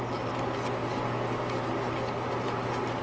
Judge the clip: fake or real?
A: real